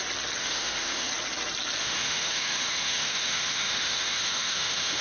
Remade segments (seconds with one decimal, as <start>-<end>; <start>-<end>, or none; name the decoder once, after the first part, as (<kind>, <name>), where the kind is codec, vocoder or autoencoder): 0.4-1.1 (autoencoder, DAC-VAE); 1.8-5.0